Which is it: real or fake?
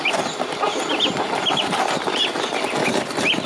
real